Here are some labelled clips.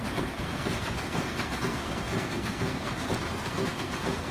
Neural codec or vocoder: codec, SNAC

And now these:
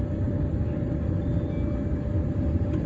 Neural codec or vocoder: none